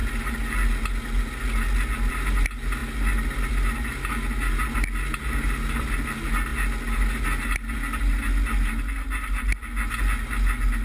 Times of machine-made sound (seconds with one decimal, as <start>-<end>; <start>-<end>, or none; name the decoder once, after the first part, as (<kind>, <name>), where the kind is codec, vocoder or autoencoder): none